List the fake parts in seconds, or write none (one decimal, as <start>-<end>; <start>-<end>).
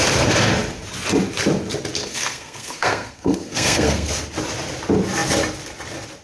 2.0-4.1